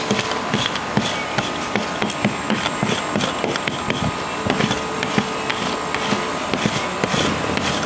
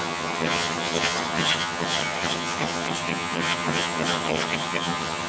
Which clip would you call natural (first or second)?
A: first